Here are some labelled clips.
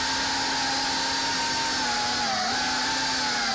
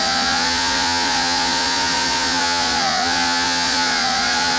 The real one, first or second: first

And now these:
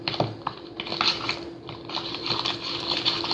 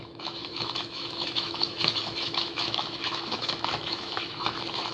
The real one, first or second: first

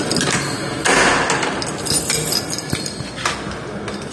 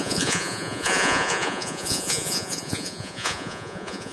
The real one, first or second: first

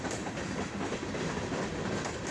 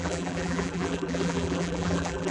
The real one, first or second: first